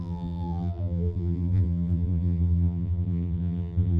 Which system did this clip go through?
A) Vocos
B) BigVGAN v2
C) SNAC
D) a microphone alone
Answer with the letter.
B